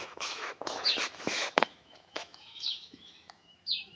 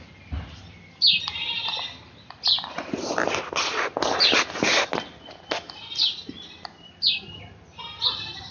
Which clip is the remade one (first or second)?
first